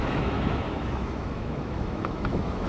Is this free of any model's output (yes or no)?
no